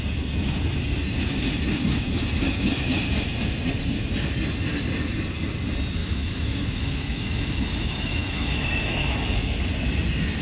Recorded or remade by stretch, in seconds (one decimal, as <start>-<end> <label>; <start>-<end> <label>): 0.0-6.0 recorded; 6.0-9.6 remade; 9.6-10.4 recorded